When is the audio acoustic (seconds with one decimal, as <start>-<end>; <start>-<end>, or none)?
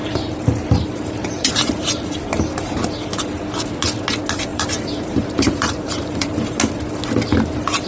2.3-4.5; 6.6-7.9